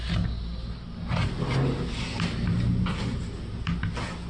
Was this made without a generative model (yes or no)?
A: yes